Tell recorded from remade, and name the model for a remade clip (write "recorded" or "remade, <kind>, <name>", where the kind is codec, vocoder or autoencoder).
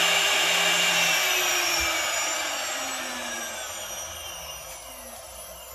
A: recorded